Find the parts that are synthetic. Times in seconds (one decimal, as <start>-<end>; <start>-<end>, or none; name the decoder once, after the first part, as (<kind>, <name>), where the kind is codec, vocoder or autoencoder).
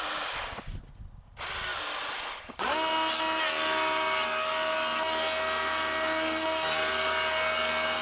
none